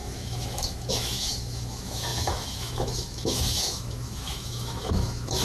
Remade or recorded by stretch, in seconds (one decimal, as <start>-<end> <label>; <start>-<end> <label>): 0.0-5.4 remade